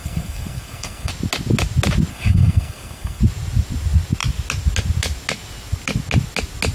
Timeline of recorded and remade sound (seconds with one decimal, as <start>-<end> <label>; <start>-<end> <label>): 0.0-1.1 remade; 1.1-2.1 recorded; 2.1-3.2 remade; 3.2-6.7 recorded